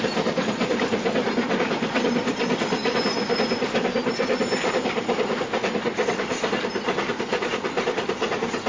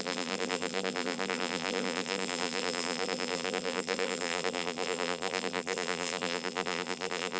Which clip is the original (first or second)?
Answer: first